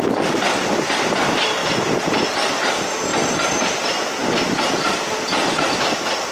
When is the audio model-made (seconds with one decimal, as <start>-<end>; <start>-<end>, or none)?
none

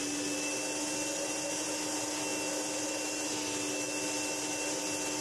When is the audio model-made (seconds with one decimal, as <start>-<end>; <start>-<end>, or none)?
none